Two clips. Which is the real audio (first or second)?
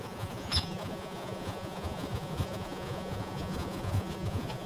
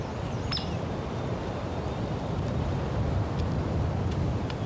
second